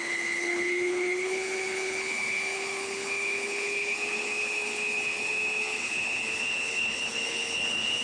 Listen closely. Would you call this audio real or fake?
fake